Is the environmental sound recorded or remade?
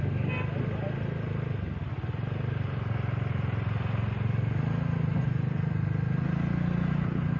recorded